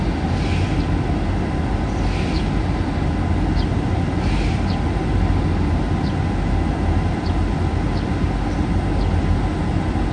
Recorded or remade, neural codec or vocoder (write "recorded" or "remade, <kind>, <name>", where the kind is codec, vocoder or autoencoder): recorded